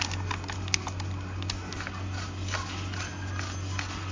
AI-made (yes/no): no